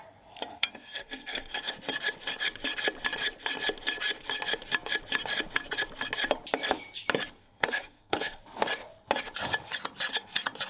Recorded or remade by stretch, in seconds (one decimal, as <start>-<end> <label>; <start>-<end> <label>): 0.0-0.5 recorded; 0.5-1.6 remade; 1.6-7.4 recorded; 7.4-8.4 remade; 8.4-10.7 recorded